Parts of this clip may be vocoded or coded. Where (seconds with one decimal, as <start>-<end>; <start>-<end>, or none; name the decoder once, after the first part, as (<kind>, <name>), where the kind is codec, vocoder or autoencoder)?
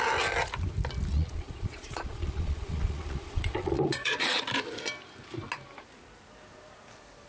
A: 1.1-4.4 (vocoder, Vocos)